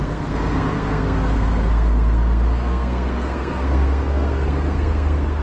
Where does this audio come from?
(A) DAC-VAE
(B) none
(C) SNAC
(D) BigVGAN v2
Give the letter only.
C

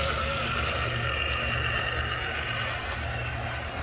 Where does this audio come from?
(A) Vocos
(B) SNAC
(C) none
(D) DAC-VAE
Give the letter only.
C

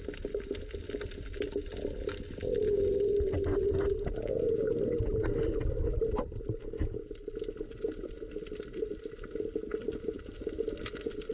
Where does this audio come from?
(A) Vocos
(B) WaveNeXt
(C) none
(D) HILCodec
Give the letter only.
C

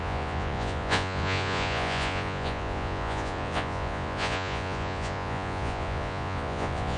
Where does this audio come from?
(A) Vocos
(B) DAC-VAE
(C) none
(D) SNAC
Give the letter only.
A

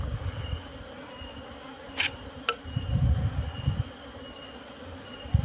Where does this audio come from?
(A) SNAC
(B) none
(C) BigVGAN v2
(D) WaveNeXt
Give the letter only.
B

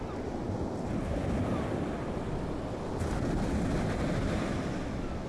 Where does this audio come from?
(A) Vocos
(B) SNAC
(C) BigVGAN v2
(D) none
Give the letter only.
D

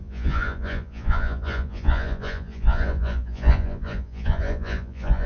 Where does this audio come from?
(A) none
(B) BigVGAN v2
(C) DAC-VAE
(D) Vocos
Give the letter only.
D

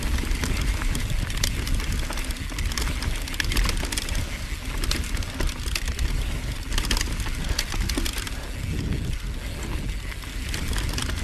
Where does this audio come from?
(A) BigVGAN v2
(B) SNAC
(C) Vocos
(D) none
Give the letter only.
D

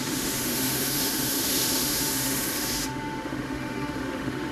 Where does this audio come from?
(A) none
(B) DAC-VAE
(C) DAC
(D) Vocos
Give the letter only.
B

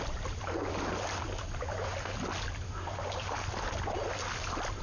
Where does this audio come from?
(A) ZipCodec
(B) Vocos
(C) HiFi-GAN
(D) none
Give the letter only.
D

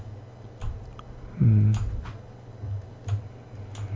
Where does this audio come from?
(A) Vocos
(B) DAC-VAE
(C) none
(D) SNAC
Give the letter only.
C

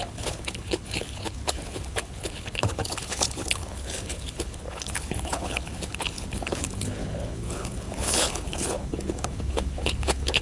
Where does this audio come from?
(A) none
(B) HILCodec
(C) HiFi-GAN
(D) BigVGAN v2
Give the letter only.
B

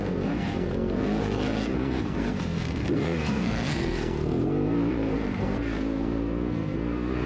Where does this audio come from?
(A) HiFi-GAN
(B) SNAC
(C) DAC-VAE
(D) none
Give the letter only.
B